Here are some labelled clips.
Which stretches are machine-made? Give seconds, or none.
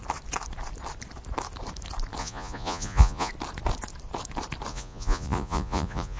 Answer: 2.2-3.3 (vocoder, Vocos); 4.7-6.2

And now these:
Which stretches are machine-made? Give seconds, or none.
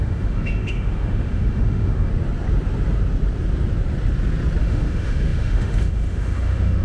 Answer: 0.0-2.1 (autoencoder, DAC-VAE); 4.6-6.8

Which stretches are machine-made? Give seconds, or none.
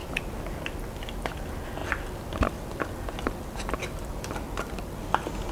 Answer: 0.0-0.6 (vocoder, BigVGAN v2)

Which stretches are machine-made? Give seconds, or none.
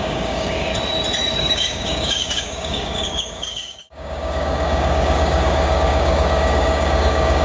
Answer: 0.0-0.7 (codec, DAC); 1.4-7.4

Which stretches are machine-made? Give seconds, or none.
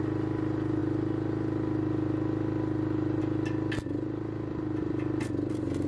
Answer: none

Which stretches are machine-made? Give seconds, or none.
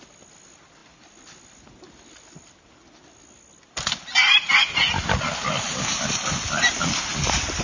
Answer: none